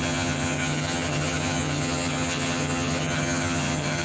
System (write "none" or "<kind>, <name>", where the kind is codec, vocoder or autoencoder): vocoder, HiFi-GAN